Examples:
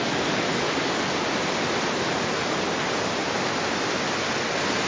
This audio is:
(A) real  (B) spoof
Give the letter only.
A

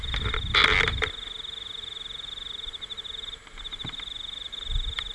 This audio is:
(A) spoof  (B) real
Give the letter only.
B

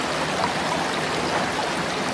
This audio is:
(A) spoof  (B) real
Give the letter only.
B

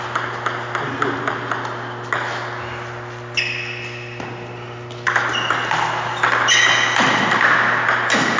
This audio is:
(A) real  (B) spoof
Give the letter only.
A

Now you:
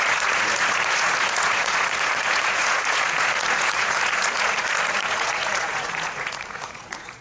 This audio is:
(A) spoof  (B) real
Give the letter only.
A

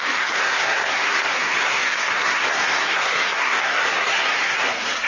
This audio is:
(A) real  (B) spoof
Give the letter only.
B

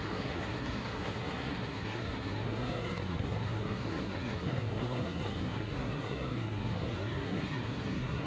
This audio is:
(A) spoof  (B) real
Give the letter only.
A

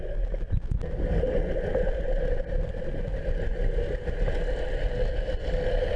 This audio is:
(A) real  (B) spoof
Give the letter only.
A